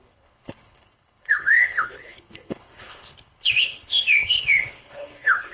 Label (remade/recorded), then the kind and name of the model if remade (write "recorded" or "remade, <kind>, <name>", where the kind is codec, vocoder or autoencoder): remade, codec, HILCodec